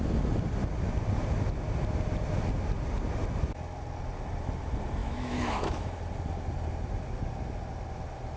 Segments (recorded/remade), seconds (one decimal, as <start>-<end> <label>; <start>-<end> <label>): 0.0-5.0 recorded; 5.0-6.0 remade; 6.0-8.4 recorded